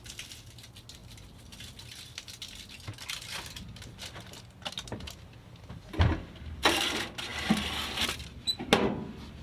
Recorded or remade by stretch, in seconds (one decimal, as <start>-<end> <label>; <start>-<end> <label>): 0.0-9.4 recorded